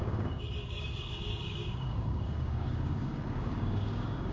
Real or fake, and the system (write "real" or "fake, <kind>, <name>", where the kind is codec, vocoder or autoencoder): fake, codec, DAC